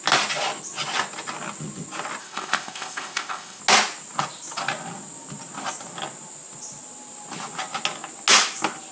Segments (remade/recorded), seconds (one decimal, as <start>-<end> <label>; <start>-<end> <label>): 0.0-2.2 recorded; 2.2-3.6 remade; 3.6-8.9 recorded